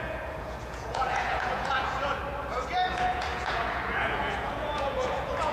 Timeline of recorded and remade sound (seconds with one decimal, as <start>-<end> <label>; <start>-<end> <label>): 0.0-2.2 remade; 2.2-2.9 recorded; 2.9-5.5 remade